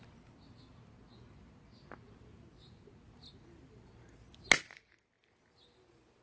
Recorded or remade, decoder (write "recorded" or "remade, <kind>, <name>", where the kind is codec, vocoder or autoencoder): recorded